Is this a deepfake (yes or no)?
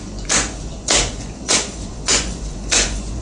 yes